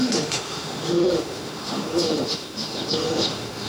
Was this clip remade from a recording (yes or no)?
yes